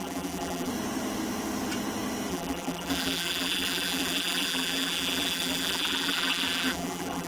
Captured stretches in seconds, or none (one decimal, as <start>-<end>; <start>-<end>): 0.7-2.3